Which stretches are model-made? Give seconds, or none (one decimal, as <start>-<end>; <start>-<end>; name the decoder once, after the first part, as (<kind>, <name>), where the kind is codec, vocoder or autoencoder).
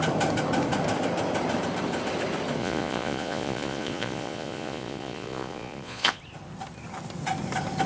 2.6-6.2 (vocoder, Vocos)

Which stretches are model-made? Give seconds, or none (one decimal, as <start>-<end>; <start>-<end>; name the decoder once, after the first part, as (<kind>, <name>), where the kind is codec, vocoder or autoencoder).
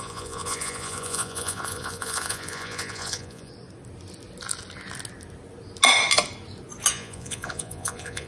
0.0-3.5 (vocoder, Vocos); 6.9-8.3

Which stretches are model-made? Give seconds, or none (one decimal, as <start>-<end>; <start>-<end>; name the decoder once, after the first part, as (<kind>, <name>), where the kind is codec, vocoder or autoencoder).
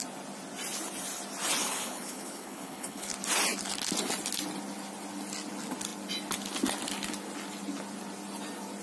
1.6-3.1 (codec, HILCodec)